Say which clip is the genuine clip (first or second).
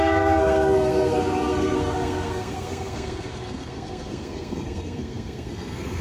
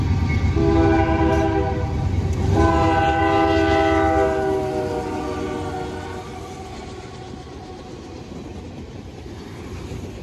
second